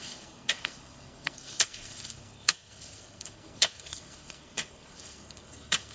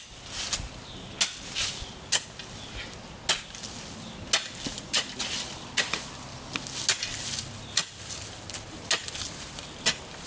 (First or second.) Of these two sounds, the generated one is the first